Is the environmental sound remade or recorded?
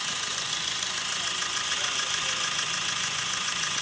remade